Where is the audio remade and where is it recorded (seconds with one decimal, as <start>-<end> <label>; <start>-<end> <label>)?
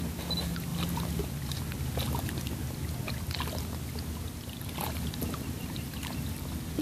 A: 0.0-6.8 recorded